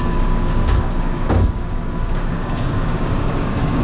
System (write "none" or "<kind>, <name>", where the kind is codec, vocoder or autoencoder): codec, DAC